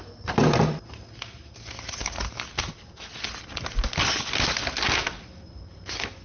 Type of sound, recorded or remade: recorded